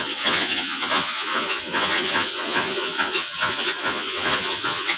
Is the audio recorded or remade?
remade